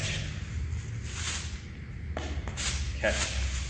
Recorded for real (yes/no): yes